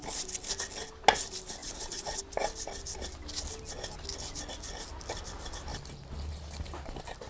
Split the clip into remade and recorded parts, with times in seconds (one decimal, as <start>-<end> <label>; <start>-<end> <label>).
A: 0.0-1.6 recorded; 1.6-2.2 remade; 2.2-7.3 recorded